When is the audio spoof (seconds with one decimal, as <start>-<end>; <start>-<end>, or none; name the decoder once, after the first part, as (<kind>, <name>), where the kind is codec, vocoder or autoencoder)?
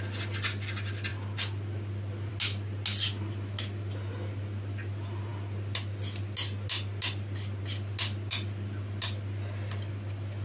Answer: 1.1-2.3 (vocoder, BigVGAN v2)